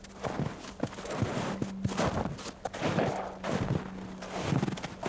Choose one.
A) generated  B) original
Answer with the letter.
B